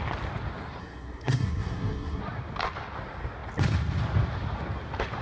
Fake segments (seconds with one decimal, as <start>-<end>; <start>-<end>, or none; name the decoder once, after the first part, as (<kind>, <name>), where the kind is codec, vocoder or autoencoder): 0.8-2.2 (codec, SNAC)